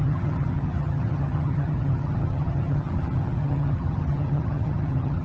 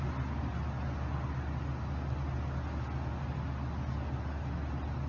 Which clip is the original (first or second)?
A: second